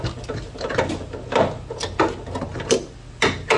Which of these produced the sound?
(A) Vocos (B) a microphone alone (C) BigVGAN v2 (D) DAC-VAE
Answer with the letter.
B